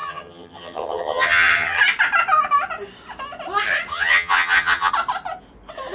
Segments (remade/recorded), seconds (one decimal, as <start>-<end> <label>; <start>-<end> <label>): 0.0-1.8 remade; 1.8-3.9 recorded; 3.9-4.9 remade; 4.9-5.9 recorded

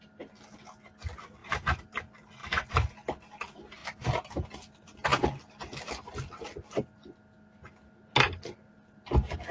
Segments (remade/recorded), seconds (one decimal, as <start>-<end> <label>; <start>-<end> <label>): 0.0-1.4 recorded; 1.4-2.0 remade; 2.0-2.4 recorded; 2.4-2.9 remade; 2.9-3.8 recorded; 3.8-4.4 remade; 4.4-9.5 recorded

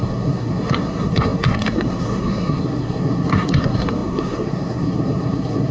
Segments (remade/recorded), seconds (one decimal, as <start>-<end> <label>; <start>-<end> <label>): 0.0-5.7 remade

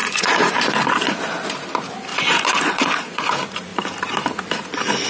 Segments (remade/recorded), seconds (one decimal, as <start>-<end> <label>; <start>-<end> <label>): 0.0-0.5 remade; 0.5-2.1 recorded; 2.1-3.2 remade; 3.2-5.1 recorded

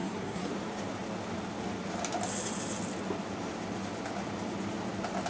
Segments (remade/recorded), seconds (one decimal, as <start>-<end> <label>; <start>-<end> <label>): 0.0-0.5 remade; 0.5-5.3 recorded

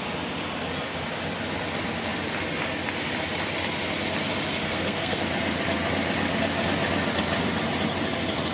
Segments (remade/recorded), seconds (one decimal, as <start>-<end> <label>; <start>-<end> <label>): 0.0-4.6 recorded; 4.6-5.2 remade; 5.2-8.5 recorded